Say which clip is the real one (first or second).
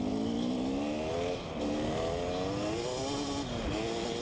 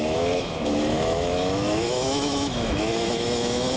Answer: first